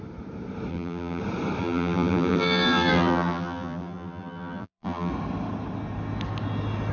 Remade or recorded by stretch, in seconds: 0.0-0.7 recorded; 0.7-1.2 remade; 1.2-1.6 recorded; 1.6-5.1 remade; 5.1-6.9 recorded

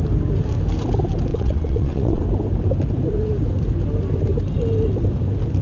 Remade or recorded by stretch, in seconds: 0.0-1.3 recorded; 1.3-2.2 remade; 2.2-5.6 recorded

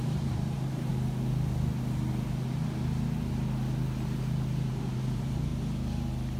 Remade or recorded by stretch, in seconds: 0.0-0.9 remade; 0.9-4.7 recorded; 4.7-5.5 remade; 5.5-6.4 recorded

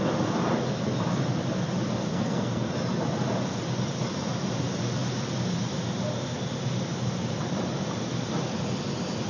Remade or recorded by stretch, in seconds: 0.0-2.1 recorded; 2.1-2.7 remade; 2.7-9.3 recorded

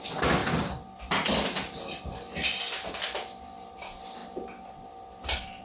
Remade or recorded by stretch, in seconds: 0.0-5.6 recorded

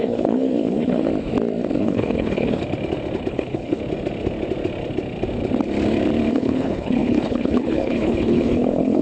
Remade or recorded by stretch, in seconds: 0.0-1.1 remade; 1.1-1.8 recorded; 1.8-2.6 remade; 2.6-3.3 recorded; 3.3-3.8 remade; 3.8-6.3 recorded; 6.3-9.0 remade